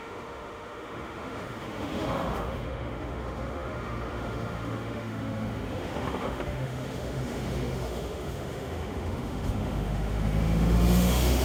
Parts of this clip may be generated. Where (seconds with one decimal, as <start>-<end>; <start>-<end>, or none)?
0.0-11.4

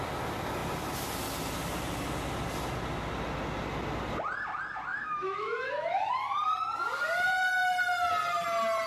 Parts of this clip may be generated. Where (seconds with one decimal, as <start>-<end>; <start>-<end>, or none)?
4.9-6.1

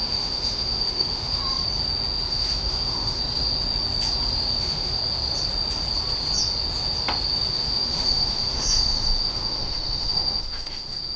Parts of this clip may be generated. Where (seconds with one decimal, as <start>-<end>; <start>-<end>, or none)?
0.0-1.4; 2.3-3.2; 4.6-5.0; 7.5-11.2

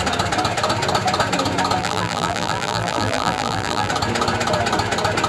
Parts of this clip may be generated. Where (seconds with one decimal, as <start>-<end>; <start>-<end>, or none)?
1.8-3.9